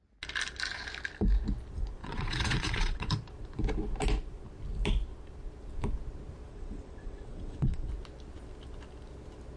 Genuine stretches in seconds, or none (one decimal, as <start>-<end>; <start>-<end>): 0.0-2.0; 3.1-6.5; 7.9-9.6